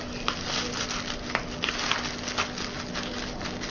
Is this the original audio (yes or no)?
yes